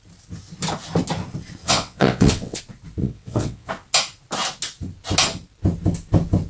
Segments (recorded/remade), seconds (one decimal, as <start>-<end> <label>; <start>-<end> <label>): 0.0-1.6 recorded; 1.6-2.6 remade; 2.6-3.0 recorded; 3.0-3.7 remade; 3.7-6.5 recorded